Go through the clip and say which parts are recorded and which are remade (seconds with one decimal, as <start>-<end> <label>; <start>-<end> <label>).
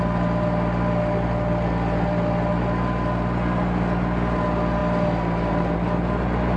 0.0-6.6 recorded